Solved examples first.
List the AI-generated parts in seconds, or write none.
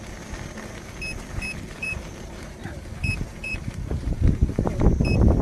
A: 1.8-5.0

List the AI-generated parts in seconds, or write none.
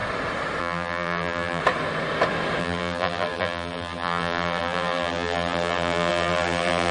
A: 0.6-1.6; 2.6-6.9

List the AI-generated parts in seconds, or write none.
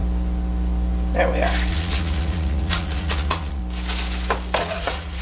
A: 1.7-3.6; 4.6-5.2